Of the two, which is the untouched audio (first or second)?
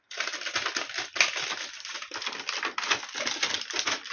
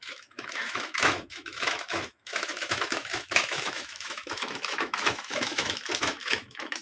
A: first